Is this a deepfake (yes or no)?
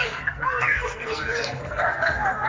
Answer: yes